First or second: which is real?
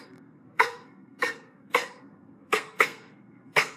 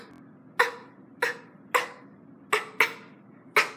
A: second